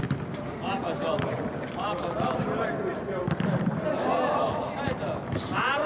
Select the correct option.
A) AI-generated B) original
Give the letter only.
B